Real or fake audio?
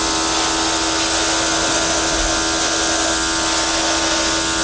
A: real